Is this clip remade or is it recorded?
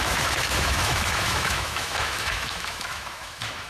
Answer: remade